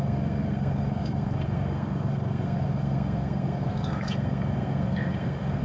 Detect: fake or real fake